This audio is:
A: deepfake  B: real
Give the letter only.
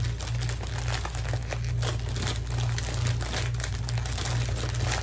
B